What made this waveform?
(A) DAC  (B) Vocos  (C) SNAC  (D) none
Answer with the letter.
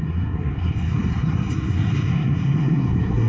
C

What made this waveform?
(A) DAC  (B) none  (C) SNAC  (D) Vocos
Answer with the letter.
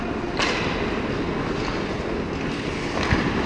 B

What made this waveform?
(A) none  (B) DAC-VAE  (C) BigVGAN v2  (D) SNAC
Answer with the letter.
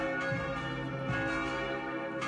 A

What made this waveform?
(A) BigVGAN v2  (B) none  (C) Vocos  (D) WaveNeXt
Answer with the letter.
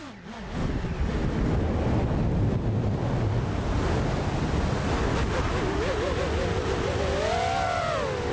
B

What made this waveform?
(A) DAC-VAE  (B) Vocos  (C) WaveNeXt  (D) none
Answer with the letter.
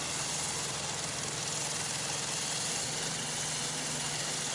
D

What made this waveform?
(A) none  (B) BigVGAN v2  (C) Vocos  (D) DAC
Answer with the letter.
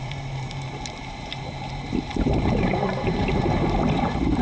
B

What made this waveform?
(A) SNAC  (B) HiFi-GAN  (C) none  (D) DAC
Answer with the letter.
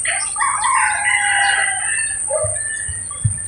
C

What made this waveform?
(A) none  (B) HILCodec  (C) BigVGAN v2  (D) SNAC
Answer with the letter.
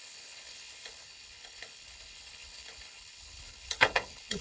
B